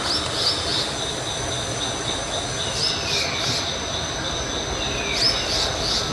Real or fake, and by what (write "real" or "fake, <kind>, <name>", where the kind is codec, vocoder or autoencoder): real